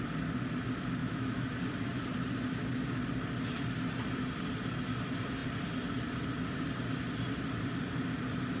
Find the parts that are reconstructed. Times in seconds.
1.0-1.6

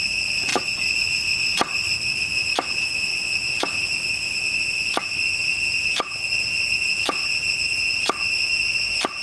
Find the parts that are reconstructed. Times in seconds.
none

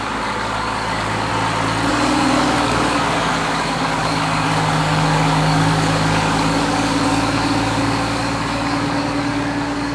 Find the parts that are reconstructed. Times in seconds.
0.0-1.3; 1.9-9.9

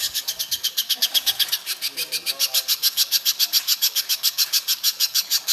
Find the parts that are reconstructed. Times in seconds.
0.0-5.5